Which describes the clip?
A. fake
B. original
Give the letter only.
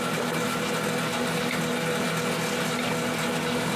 B